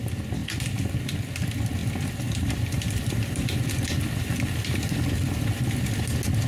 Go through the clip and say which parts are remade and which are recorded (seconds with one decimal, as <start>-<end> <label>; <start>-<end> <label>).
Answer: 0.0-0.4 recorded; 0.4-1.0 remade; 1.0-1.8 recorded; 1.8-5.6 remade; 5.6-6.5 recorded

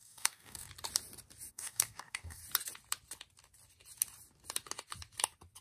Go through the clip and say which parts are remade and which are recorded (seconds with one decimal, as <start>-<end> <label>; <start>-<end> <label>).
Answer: 0.0-0.7 remade; 0.7-1.5 recorded; 1.5-2.4 remade; 2.4-5.6 recorded

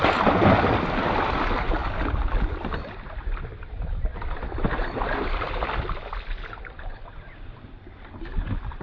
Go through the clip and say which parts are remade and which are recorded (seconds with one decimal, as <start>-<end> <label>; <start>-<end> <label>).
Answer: 0.0-1.8 recorded; 1.8-3.2 remade; 3.2-4.1 recorded; 4.1-7.5 remade; 7.5-8.8 recorded

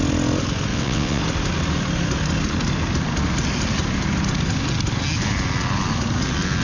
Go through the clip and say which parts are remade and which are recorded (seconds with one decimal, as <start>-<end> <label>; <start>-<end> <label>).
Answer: 0.0-0.7 recorded; 0.7-1.2 remade; 1.2-6.6 recorded

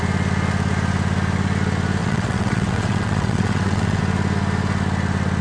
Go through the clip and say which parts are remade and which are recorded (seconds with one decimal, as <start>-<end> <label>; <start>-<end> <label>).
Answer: 0.0-2.0 recorded; 2.0-4.0 remade; 4.0-5.4 recorded